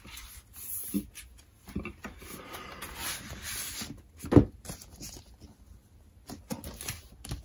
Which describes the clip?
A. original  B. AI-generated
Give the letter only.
A